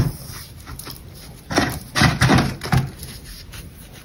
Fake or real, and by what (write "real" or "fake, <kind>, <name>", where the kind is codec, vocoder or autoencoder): real